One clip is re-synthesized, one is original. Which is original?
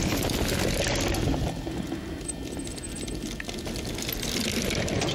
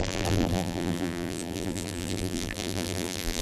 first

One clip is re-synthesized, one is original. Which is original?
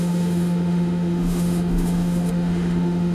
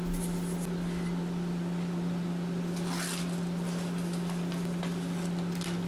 second